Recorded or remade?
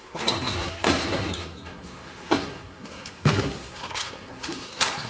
remade